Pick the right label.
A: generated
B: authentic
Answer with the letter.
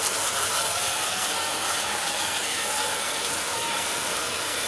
A